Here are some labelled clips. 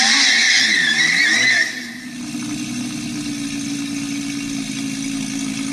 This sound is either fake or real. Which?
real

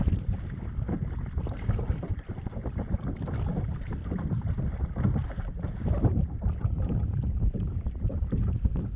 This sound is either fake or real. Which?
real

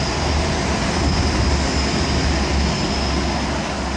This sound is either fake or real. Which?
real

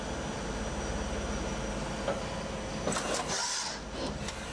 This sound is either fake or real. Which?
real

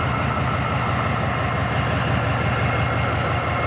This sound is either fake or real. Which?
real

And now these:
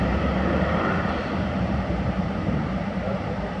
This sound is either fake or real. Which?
fake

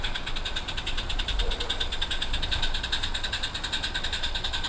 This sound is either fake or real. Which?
real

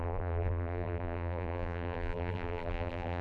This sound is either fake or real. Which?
fake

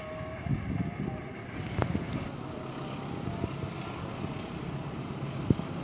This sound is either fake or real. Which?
real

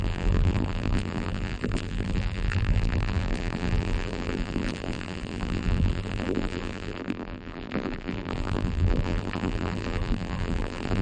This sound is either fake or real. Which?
fake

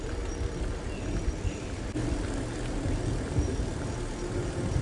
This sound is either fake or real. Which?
real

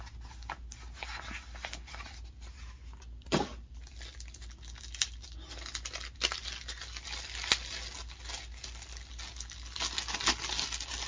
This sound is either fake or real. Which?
real